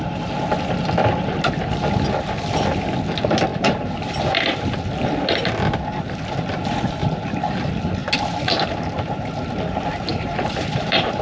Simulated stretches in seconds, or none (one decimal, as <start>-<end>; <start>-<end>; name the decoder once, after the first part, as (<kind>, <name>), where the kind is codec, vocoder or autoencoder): 3.5-4.6 (vocoder, BigVGAN v2); 7.0-7.6; 8.0-8.9; 10.1-11.2